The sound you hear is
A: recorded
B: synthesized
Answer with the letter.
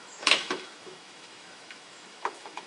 B